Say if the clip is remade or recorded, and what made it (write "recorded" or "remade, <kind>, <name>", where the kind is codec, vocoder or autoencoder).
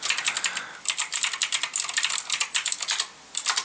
recorded